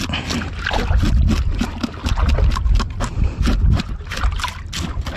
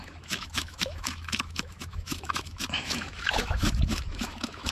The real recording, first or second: first